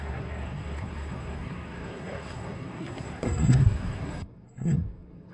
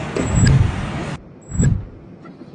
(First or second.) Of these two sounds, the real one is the second